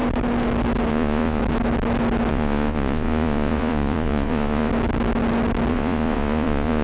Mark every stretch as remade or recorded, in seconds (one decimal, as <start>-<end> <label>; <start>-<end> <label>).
0.0-0.9 recorded; 0.9-1.4 remade; 1.4-2.3 recorded; 2.3-4.7 remade; 4.7-5.7 recorded; 5.7-6.8 remade